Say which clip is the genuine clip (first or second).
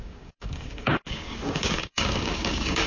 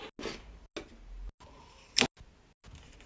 second